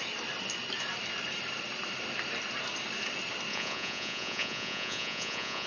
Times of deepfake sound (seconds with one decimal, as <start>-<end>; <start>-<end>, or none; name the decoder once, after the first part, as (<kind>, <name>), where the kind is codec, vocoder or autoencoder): 3.5-5.7 (vocoder, Vocos)